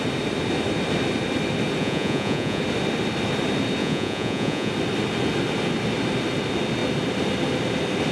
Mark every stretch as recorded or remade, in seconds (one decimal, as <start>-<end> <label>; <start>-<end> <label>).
0.0-1.8 recorded; 1.8-2.6 remade; 2.6-3.8 recorded; 3.8-4.7 remade; 4.7-8.1 recorded